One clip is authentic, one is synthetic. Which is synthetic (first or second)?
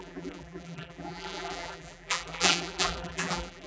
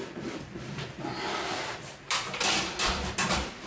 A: first